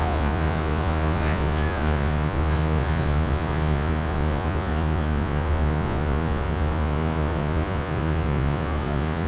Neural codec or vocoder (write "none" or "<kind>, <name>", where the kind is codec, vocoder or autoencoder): vocoder, Vocos